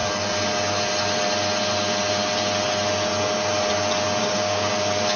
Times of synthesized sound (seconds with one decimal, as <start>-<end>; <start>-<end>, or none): 4.2-4.7